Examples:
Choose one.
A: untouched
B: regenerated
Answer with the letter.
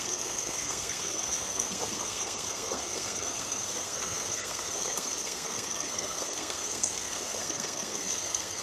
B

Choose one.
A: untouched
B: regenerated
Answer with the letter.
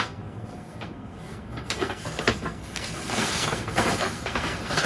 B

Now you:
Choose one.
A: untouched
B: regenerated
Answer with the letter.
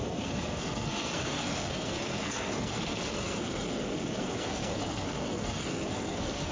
B